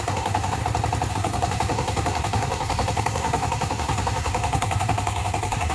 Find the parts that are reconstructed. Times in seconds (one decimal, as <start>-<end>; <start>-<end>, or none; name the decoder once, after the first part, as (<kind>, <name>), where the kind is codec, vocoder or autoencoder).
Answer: 0.0-0.6 (codec, SNAC); 1.1-5.7

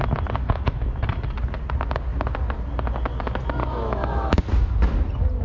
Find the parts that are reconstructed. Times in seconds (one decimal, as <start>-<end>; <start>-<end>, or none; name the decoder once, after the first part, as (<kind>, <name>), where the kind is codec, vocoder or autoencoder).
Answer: 0.4-0.9 (autoencoder, DAC-VAE); 3.6-4.4

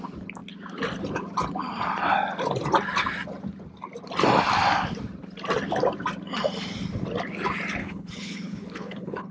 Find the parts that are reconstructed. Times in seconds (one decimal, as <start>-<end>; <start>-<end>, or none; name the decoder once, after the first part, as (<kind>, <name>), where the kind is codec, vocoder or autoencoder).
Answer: 7.8-9.3 (codec, HILCodec)

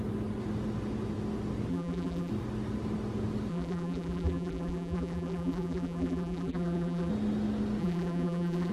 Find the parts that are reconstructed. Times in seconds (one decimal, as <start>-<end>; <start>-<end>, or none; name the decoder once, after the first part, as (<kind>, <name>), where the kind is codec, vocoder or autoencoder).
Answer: 1.7-2.3 (vocoder, BigVGAN v2); 3.5-7.1; 7.8-8.7

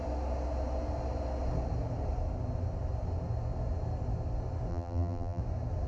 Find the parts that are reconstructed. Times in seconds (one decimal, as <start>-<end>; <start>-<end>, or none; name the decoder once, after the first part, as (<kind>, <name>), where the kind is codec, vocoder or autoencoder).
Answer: 4.7-5.4 (vocoder, BigVGAN v2)

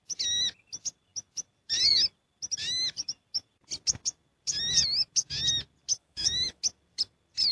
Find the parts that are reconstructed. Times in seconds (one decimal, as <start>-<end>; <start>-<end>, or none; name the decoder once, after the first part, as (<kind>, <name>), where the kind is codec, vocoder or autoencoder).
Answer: 5.9-6.6 (autoencoder, DAC-VAE)